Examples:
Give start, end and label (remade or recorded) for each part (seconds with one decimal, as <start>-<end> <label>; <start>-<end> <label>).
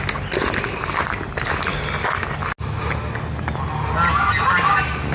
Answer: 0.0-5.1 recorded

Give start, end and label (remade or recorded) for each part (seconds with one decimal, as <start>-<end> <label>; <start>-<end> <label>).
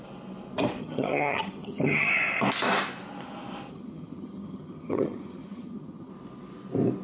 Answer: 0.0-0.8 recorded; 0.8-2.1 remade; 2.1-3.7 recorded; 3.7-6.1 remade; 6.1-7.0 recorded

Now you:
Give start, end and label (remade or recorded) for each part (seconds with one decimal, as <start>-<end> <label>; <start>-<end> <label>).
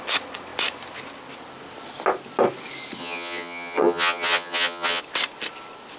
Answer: 0.0-3.0 recorded; 3.0-5.0 remade; 5.0-6.0 recorded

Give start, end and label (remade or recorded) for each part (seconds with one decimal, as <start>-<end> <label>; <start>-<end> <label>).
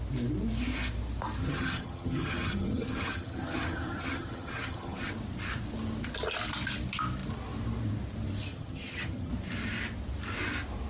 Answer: 0.0-1.4 recorded; 1.4-5.1 remade; 5.1-8.5 recorded; 8.5-9.3 remade; 9.3-10.9 recorded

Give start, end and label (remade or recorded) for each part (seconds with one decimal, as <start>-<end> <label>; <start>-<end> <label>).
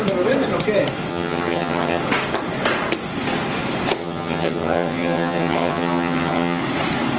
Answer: 0.0-1.1 recorded; 1.1-2.0 remade; 2.0-4.0 recorded; 4.0-6.6 remade; 6.6-7.2 recorded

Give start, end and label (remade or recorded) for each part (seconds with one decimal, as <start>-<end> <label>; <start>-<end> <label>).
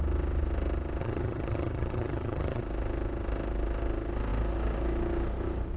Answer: 0.0-1.0 recorded; 1.0-2.6 remade; 2.6-5.8 recorded